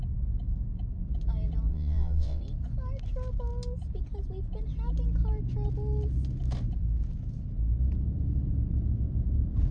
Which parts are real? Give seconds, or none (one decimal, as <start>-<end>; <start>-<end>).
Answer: 0.0-1.7; 2.4-9.7